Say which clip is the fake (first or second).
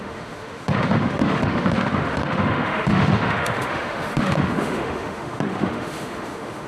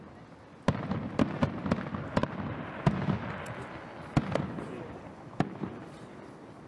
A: first